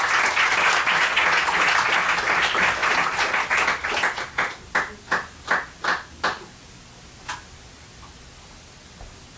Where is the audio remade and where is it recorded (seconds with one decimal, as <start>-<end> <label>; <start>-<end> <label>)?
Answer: 0.0-9.4 recorded